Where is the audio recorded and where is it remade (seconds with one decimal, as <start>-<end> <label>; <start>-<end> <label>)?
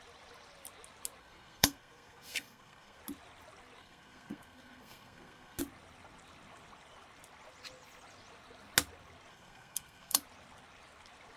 0.0-1.2 recorded; 1.2-3.0 remade; 3.0-3.8 recorded; 3.8-5.6 remade; 5.6-9.3 recorded; 9.3-10.2 remade; 10.2-11.4 recorded